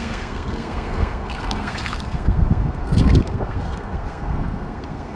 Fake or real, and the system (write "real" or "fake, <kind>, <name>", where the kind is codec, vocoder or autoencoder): fake, codec, SNAC